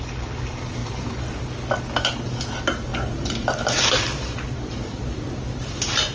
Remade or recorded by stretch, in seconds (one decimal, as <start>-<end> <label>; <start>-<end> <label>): 0.0-6.1 recorded